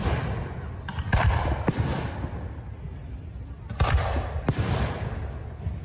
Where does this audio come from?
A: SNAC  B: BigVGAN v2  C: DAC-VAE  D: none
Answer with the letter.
D